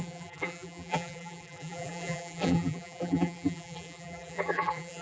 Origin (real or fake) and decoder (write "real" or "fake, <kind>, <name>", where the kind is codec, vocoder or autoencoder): fake, vocoder, BigVGAN v2